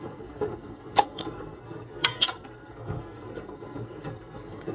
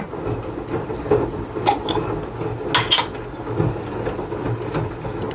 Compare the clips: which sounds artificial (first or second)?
first